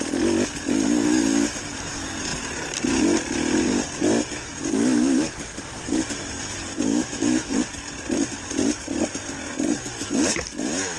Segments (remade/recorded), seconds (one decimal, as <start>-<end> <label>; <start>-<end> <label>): 0.0-6.9 recorded; 6.9-7.5 remade; 7.5-11.0 recorded